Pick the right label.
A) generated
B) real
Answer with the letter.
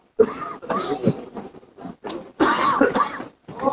B